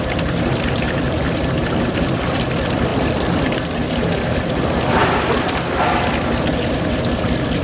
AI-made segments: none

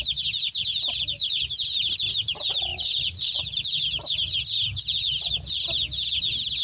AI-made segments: 2.7-3.4 (vocoder, Vocos)

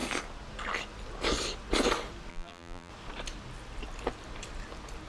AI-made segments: 2.3-2.9 (vocoder, BigVGAN v2)